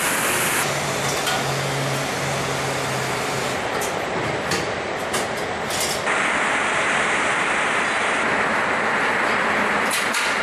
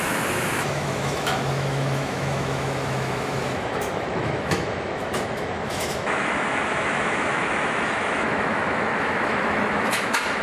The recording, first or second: first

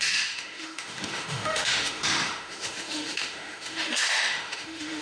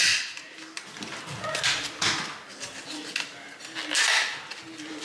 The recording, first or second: second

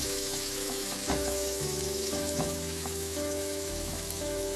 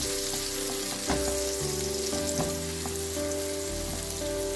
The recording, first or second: second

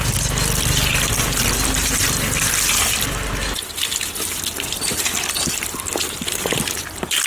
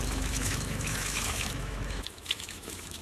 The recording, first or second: first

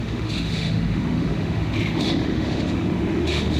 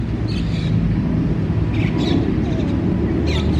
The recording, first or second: second